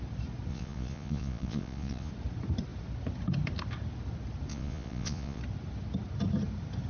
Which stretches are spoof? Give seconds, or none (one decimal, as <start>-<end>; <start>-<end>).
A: 0.5-2.1; 4.5-5.4